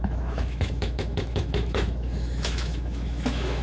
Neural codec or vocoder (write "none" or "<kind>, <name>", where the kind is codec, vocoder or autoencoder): autoencoder, DAC-VAE